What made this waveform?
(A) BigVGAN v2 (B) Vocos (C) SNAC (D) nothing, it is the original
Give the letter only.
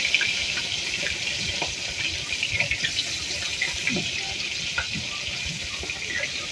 D